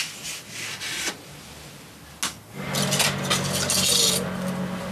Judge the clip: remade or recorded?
recorded